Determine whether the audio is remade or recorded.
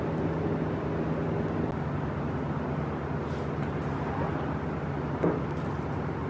recorded